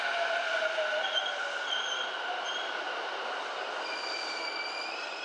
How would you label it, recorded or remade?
remade